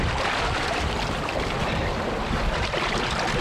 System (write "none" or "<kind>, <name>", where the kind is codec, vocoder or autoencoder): none